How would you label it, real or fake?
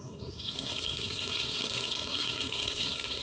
fake